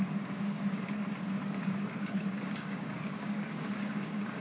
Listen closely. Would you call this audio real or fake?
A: fake